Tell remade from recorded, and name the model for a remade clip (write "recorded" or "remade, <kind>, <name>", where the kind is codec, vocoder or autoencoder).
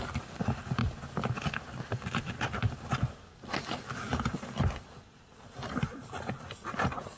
recorded